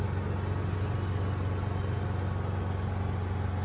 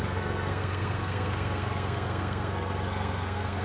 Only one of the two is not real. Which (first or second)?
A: second